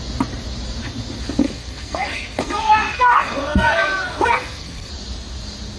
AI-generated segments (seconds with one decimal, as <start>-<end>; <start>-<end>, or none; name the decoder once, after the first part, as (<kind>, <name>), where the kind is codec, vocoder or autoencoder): 1.4-4.9 (codec, SNAC)